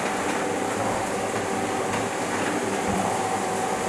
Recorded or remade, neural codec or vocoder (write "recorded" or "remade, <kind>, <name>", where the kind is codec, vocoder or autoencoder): recorded